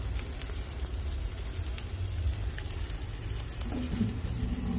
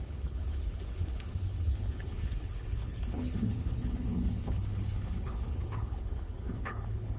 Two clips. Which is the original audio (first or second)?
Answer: first